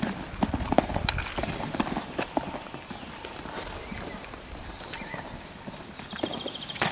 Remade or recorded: recorded